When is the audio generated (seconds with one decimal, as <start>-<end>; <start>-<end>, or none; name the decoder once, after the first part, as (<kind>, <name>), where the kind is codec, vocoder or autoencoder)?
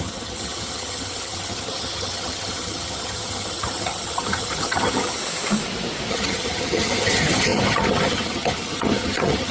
0.0-5.2 (vocoder, HiFi-GAN); 6.1-9.5